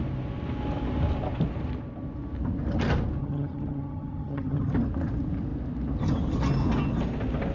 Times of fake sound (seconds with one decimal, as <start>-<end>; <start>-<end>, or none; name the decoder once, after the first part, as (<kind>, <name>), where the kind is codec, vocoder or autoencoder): 3.2-4.7 (vocoder, HiFi-GAN)